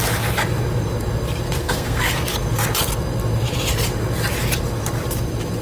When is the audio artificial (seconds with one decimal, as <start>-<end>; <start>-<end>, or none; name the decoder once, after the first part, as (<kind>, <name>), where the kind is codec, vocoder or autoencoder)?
1.6-2.2 (codec, SNAC)